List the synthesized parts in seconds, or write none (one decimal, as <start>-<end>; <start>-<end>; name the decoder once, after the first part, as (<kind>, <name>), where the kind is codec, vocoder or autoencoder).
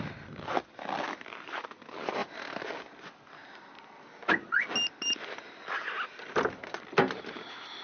none